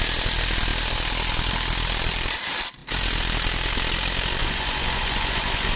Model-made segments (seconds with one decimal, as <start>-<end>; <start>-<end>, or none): 4.4-5.8